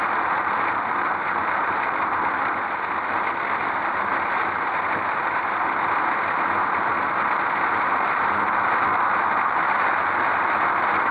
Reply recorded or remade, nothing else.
recorded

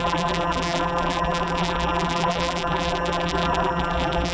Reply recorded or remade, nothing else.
remade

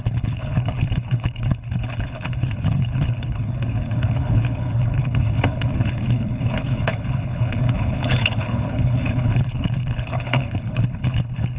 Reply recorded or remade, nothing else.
remade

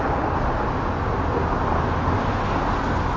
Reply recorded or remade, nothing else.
recorded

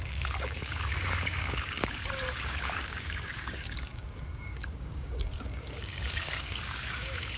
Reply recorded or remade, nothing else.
remade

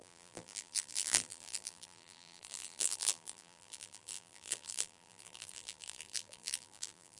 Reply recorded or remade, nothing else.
remade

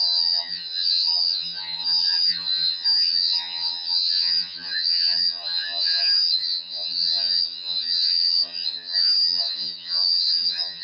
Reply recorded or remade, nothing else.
remade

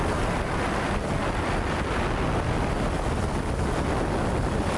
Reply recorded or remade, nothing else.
recorded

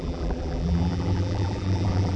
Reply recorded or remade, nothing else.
remade